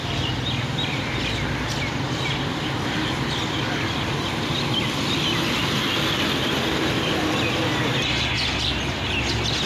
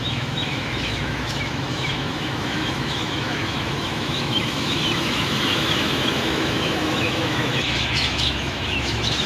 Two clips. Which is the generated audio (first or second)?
second